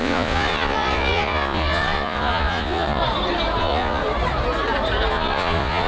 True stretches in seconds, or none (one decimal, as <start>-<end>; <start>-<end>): 3.0-3.6; 4.0-5.1

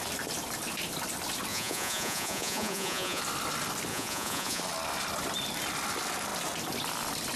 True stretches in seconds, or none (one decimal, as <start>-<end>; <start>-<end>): 0.0-1.5; 3.2-3.9; 4.6-7.4